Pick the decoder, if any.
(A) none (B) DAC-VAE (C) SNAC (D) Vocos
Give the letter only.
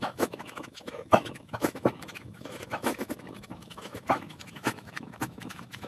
B